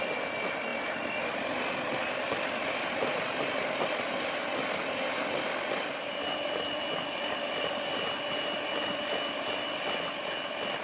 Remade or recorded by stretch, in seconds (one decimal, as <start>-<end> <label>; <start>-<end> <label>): 0.0-10.8 recorded